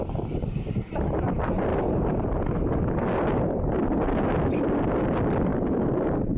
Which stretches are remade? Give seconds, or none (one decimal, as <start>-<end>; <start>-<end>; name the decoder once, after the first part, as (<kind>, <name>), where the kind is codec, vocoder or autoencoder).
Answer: none